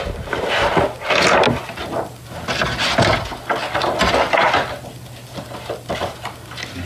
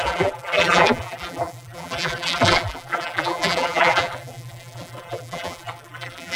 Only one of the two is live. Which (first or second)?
first